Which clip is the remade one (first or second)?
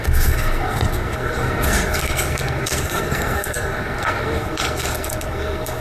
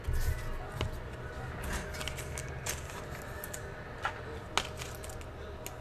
first